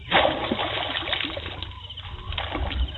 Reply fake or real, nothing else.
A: real